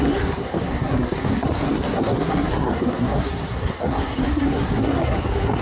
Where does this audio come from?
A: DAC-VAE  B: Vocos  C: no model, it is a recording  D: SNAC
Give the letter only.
D